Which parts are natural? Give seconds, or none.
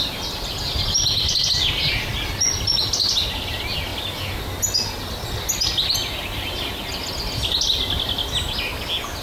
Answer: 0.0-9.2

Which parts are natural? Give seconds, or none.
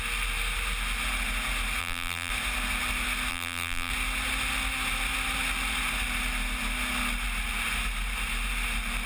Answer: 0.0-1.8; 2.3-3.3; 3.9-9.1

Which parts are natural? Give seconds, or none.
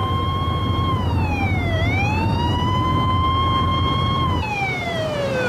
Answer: none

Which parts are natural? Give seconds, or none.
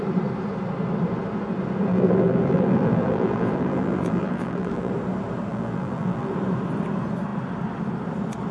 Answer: 0.0-1.9; 4.9-5.5; 6.3-8.5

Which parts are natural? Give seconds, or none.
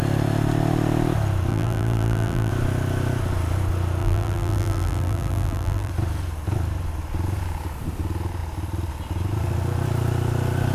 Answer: 0.0-1.5; 2.5-4.0; 5.9-10.7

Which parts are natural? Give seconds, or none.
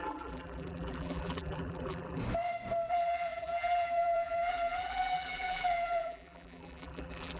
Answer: 2.2-2.9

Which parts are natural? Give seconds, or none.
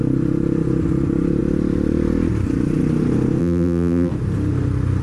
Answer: 0.0-3.4; 4.1-5.0